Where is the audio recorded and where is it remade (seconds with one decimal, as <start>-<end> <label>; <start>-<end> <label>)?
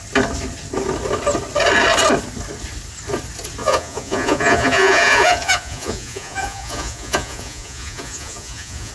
0.0-3.6 recorded; 3.6-8.9 remade